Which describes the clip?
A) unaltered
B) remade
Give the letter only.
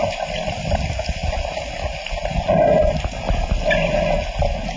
A